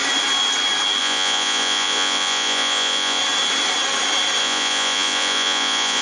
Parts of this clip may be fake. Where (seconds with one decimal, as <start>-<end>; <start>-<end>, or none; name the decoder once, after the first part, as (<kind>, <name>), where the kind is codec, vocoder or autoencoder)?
1.0-3.2 (vocoder, Vocos); 4.4-6.0